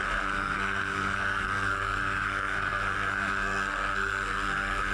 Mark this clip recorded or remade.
remade